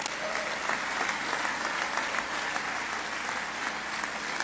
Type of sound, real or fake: real